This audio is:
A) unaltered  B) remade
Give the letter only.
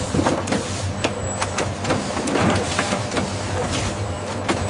B